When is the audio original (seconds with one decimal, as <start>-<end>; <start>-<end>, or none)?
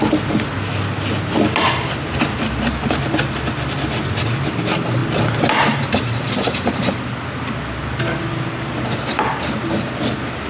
0.0-10.5